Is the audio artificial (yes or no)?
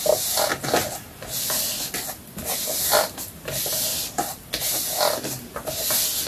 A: no